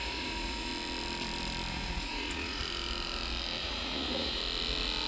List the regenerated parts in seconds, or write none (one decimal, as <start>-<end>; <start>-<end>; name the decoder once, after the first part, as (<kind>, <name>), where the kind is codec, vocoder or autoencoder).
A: 0.0-0.7 (vocoder, Vocos); 1.7-2.6; 3.6-4.4